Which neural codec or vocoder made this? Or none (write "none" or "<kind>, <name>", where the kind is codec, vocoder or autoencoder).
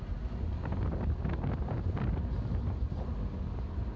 none